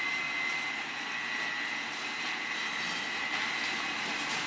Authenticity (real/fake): real